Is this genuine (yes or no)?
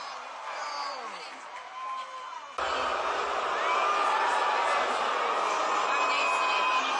yes